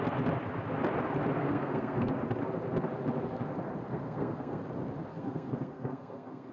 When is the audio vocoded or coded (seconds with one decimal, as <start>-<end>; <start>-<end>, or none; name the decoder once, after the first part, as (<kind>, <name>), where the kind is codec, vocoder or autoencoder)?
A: 1.4-2.1 (codec, SNAC); 3.9-4.6; 5.1-6.5